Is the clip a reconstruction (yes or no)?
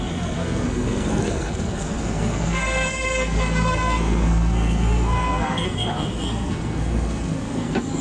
yes